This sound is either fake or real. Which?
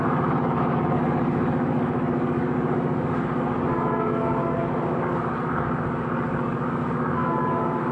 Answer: fake